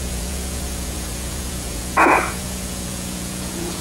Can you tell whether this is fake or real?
fake